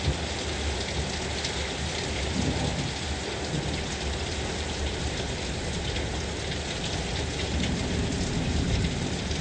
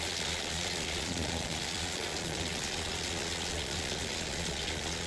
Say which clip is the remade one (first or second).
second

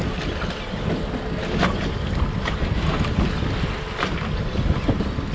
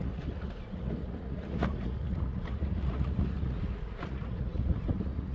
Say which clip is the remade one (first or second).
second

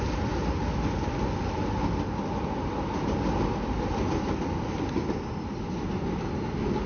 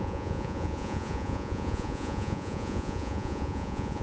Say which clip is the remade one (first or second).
second